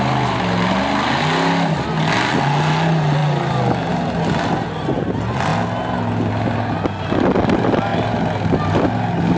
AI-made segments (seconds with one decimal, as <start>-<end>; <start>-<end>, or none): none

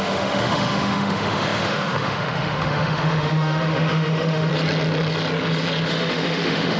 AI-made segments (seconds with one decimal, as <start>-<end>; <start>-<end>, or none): 0.0-4.5; 5.9-6.8

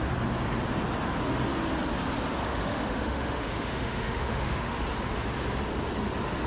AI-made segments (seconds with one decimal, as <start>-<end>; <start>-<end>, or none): 2.4-4.8

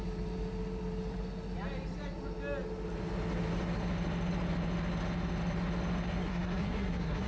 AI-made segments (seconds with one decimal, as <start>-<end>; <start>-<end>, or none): 6.2-7.3